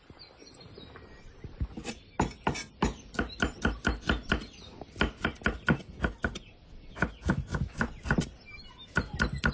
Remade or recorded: recorded